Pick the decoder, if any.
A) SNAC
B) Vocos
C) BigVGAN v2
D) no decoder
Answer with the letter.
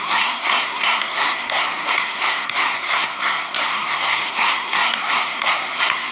A